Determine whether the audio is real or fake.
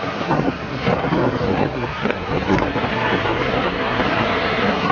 fake